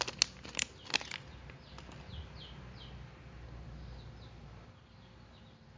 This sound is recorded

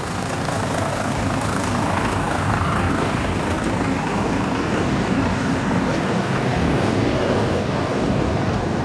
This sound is remade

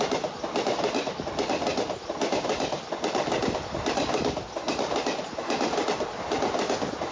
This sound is recorded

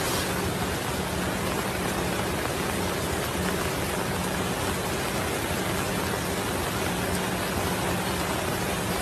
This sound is recorded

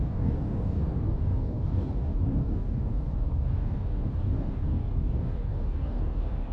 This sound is remade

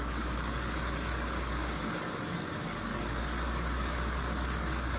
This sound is remade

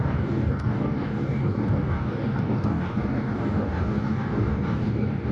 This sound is remade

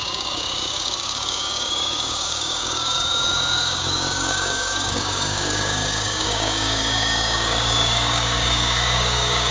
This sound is remade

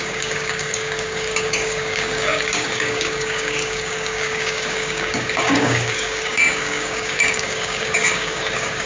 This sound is remade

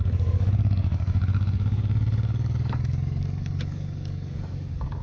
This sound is remade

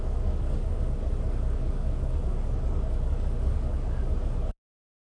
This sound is remade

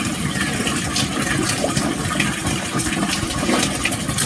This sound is recorded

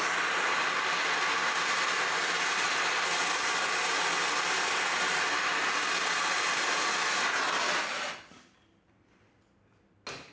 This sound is recorded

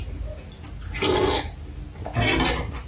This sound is recorded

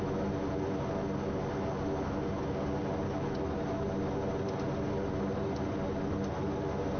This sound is recorded